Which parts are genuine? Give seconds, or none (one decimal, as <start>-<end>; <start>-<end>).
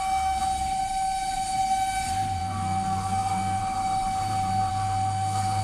0.4-2.4; 3.6-4.7